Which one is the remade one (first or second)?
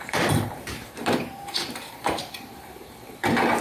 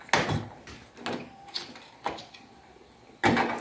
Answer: first